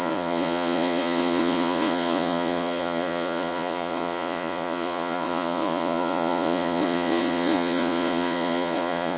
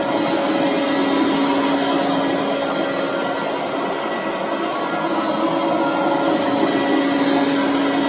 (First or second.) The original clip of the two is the second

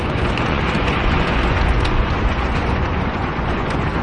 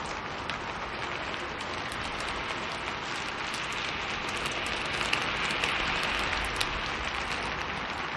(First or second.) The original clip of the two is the second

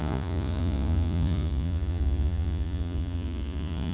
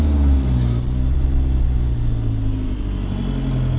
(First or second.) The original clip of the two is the second